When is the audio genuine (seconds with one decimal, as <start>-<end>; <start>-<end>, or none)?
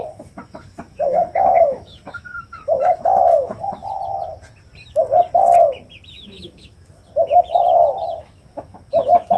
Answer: 3.8-6.1; 7.0-8.2